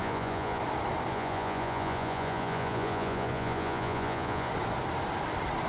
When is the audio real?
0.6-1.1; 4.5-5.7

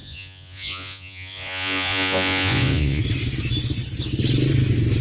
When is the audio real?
3.0-5.0

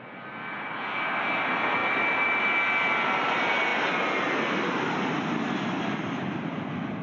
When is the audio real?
0.0-7.0

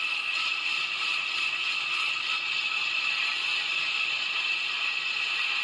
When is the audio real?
0.0-0.4; 3.1-3.7

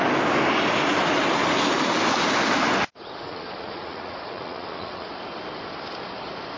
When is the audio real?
0.0-2.8; 5.1-6.6